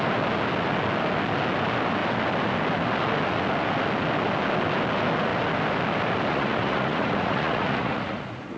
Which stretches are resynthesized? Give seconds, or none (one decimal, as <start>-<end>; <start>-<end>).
6.3-8.6